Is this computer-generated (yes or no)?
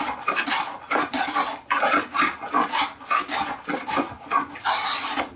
no